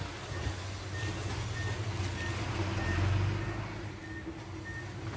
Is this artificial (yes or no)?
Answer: no